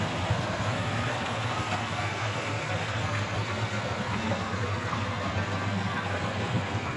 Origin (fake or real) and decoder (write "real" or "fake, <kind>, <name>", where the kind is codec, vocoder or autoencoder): fake, codec, SNAC